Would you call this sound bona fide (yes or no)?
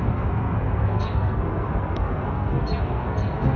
no